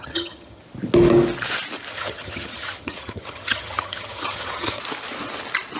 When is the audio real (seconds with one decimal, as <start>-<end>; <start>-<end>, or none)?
0.6-1.9; 4.8-5.8